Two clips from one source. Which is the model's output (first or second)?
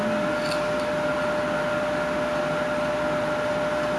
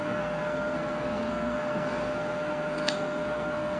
second